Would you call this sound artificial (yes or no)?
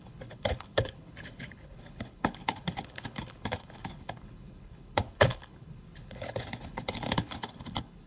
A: yes